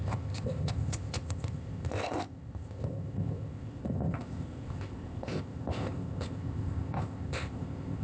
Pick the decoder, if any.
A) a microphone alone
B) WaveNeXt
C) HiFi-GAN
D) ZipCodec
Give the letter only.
D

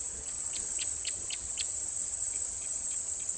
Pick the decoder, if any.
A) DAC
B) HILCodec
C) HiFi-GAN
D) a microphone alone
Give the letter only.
C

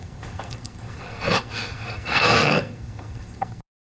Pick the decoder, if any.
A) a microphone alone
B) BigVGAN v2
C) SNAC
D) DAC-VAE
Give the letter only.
C